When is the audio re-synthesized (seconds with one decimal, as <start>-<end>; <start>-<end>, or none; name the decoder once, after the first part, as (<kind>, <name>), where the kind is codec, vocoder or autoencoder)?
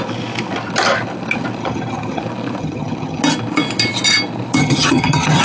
1.6-2.2 (vocoder, HiFi-GAN); 2.6-3.2; 4.6-5.4